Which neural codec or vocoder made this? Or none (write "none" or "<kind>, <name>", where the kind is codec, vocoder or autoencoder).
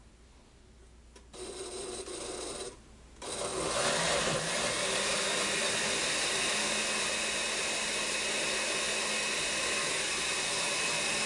none